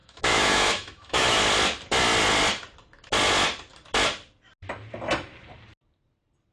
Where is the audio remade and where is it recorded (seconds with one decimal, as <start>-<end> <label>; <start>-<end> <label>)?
0.0-1.4 remade; 1.4-6.5 recorded